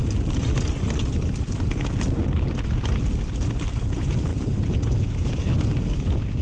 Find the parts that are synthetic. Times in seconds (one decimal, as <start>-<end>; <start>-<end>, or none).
3.8-6.4